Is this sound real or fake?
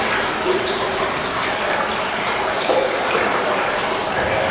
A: real